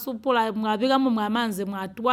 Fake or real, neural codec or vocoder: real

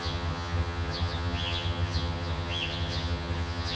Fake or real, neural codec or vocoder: fake, vocoder, HiFi-GAN